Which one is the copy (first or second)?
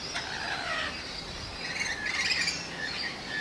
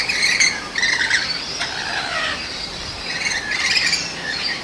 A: second